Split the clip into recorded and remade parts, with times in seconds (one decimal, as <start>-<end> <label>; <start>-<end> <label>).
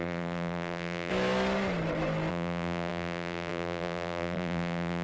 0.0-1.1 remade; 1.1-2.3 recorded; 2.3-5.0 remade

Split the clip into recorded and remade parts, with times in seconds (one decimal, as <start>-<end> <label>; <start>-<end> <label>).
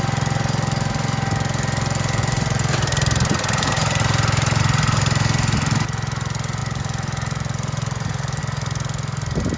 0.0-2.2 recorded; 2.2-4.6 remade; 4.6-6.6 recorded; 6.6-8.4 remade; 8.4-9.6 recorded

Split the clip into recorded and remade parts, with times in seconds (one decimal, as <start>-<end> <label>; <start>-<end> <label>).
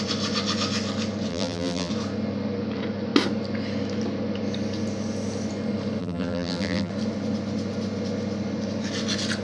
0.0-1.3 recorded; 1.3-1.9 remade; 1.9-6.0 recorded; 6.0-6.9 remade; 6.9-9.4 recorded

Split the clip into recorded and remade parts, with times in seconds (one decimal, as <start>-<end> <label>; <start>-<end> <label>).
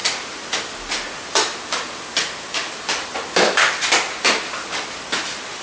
0.0-0.5 remade; 0.5-5.6 recorded